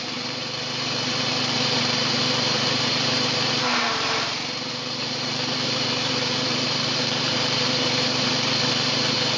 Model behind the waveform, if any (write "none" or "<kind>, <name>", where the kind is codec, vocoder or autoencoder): vocoder, BigVGAN v2